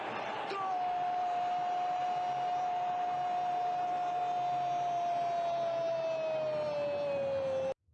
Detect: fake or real real